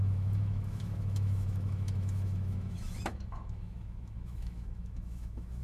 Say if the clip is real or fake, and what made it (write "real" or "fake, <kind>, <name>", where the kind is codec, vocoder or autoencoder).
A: fake, autoencoder, DAC-VAE